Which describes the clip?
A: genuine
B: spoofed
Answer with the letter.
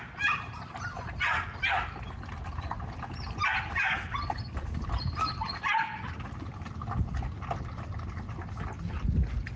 A